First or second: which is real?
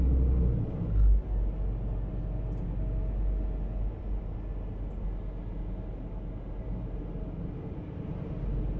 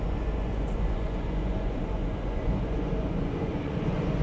first